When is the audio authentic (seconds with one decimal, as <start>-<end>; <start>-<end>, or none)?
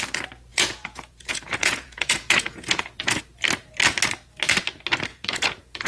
0.0-0.5; 3.2-5.1